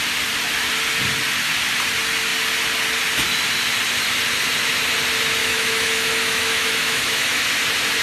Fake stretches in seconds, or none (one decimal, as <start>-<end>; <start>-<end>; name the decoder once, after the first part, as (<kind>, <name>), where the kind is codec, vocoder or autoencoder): 5.4-7.4 (autoencoder, DAC-VAE)